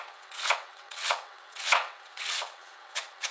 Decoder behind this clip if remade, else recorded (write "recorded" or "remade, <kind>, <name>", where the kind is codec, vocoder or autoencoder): remade, vocoder, WaveNeXt